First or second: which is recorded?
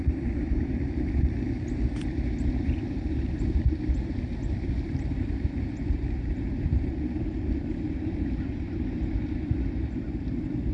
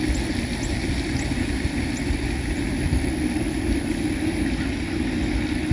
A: second